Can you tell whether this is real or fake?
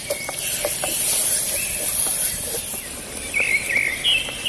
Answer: real